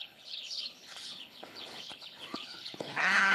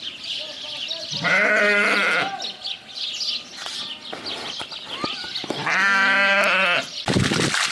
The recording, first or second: second